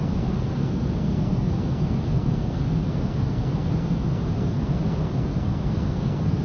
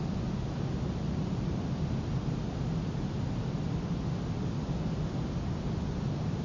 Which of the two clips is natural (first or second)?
second